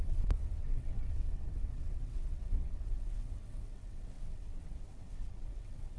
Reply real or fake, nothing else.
fake